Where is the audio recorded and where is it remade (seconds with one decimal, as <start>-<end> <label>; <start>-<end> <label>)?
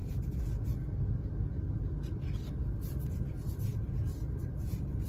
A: 0.0-5.1 recorded